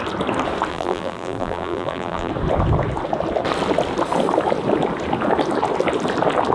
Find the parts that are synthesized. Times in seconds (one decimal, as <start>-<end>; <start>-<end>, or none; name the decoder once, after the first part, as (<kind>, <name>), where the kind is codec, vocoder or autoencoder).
0.7-2.3 (vocoder, BigVGAN v2)